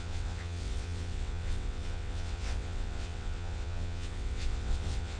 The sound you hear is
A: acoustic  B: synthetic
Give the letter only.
B